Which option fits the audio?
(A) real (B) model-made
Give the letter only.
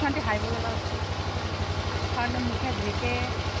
A